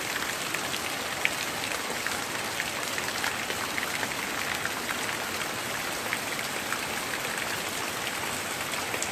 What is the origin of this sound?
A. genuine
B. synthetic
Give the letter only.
A